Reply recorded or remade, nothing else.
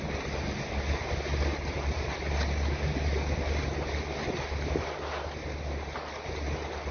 recorded